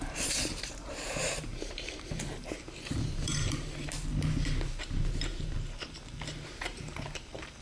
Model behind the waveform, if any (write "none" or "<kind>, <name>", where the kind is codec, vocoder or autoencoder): vocoder, BigVGAN v2